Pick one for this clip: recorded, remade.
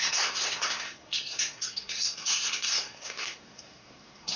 remade